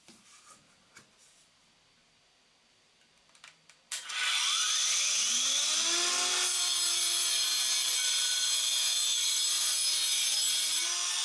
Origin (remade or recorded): recorded